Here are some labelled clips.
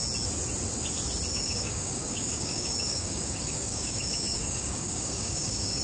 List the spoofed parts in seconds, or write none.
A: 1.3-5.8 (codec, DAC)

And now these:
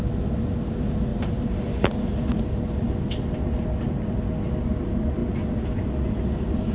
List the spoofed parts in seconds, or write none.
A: 1.1-2.1 (vocoder, BigVGAN v2)

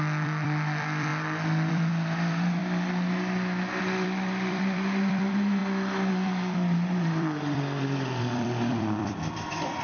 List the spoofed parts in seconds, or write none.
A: 0.0-1.1 (vocoder, BigVGAN v2); 1.7-2.6; 3.8-5.6; 6.1-9.8

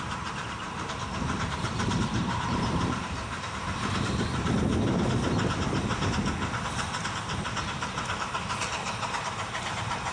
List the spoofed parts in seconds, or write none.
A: 0.0-4.7 (vocoder, BigVGAN v2); 7.0-10.1

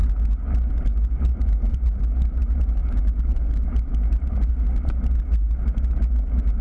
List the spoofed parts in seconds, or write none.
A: 1.3-2.0 (vocoder, BigVGAN v2); 2.8-4.5